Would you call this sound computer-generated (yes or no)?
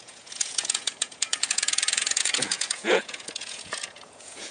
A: yes